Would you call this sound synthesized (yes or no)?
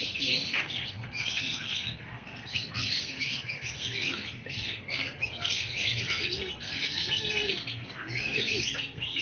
yes